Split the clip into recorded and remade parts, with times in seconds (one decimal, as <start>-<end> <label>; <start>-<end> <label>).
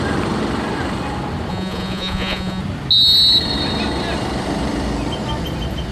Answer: 0.0-1.5 recorded; 1.5-2.6 remade; 2.6-5.9 recorded